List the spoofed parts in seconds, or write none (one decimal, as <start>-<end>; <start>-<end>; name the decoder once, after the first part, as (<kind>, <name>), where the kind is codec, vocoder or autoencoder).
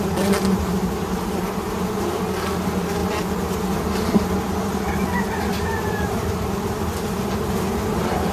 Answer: none